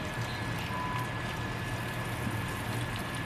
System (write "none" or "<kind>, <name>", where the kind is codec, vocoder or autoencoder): none